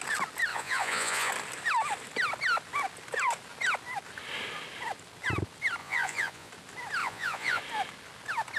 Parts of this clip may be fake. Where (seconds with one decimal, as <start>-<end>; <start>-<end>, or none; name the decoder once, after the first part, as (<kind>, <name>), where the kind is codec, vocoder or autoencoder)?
0.5-1.3 (vocoder, Vocos); 5.8-6.5; 7.0-7.6